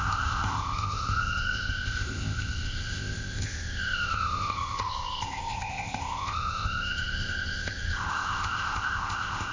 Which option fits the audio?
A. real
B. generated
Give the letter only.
B